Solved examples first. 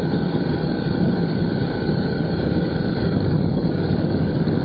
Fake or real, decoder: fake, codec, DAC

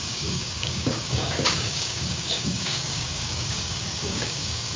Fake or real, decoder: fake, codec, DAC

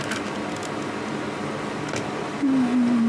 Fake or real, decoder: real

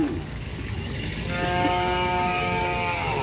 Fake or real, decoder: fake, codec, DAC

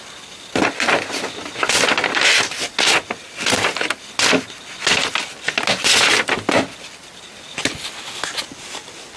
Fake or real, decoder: real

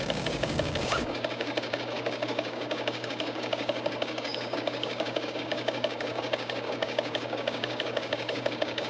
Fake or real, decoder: fake, codec, DAC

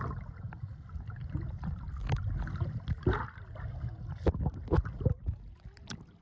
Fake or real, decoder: real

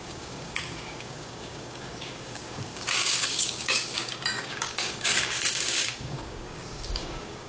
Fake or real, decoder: fake, codec, DAC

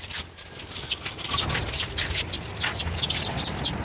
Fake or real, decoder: real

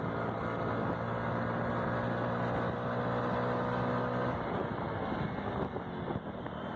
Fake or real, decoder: real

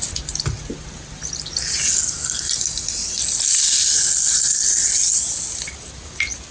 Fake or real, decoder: real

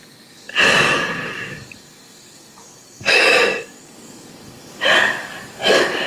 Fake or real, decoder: fake, codec, DAC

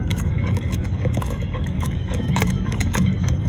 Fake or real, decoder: fake, codec, DAC